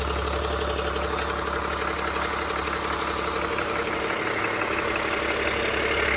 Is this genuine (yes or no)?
yes